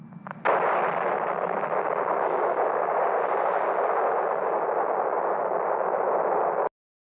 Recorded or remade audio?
recorded